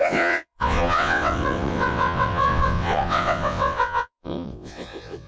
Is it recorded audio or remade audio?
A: remade